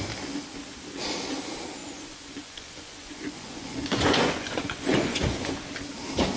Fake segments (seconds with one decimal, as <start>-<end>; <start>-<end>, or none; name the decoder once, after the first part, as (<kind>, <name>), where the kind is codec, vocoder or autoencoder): 1.8-5.6 (vocoder, Vocos)